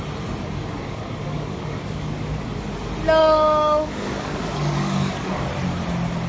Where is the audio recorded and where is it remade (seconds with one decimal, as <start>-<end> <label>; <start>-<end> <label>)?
0.0-0.4 recorded; 0.4-2.7 remade; 2.7-3.2 recorded; 3.2-5.5 remade; 5.5-6.3 recorded